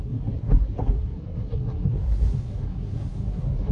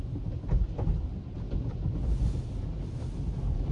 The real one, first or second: second